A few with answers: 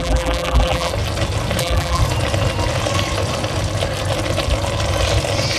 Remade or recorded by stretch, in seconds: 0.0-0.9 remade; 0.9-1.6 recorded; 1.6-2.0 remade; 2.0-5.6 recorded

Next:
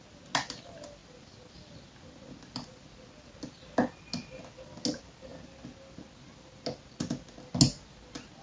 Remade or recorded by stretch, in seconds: 0.0-8.4 recorded

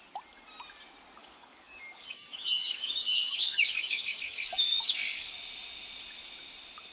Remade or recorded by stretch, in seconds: 0.0-1.2 recorded; 1.2-5.3 remade; 5.3-6.9 recorded

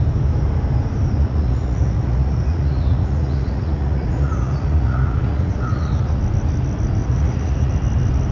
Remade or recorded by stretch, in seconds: 0.0-1.2 recorded; 1.2-6.2 remade; 6.2-7.0 recorded; 7.0-7.7 remade; 7.7-8.3 recorded

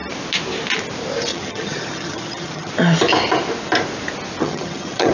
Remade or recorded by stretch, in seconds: 0.0-1.3 recorded; 1.3-2.7 remade; 2.7-4.4 recorded; 4.4-5.1 remade